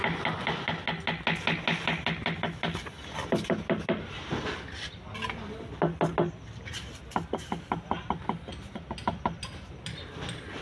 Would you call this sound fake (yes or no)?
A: no